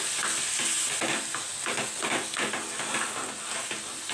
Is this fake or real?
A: real